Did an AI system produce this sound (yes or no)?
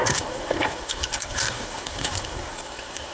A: yes